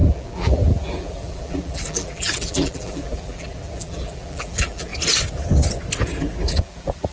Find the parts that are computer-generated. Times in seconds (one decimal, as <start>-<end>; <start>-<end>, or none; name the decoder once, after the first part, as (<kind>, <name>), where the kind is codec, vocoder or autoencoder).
0.0-4.9 (vocoder, BigVGAN v2); 6.5-7.1